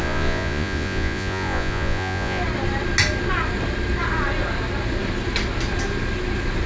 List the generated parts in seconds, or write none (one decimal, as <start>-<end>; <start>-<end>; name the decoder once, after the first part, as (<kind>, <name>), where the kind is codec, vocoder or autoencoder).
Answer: 0.0-2.4 (vocoder, Vocos)

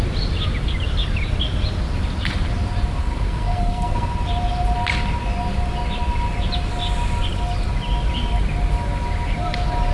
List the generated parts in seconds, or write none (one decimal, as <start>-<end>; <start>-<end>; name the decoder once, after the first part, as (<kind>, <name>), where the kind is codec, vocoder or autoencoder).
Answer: 3.0-4.1 (codec, SNAC)

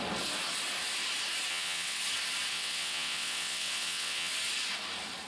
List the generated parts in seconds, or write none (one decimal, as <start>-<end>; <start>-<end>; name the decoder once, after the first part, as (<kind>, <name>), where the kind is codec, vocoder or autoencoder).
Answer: 1.5-2.0 (vocoder, WaveNeXt); 2.5-4.3

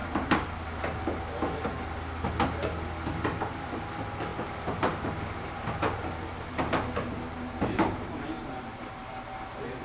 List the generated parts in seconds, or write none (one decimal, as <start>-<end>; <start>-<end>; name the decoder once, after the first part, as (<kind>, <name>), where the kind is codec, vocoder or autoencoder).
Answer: 0.0-0.7 (vocoder, BigVGAN v2); 4.3-9.0